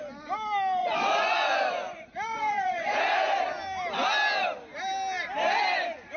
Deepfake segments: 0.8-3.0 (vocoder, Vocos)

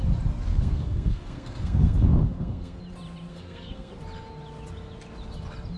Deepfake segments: 0.5-2.8 (codec, SNAC); 3.3-3.9

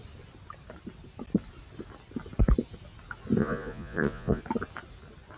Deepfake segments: 3.4-4.4 (vocoder, Vocos)